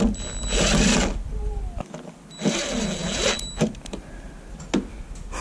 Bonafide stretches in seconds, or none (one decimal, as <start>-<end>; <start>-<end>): 0.0-5.4